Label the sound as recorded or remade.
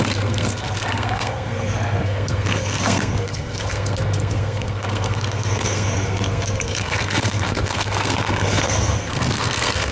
remade